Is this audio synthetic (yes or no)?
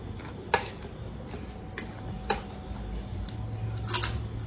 no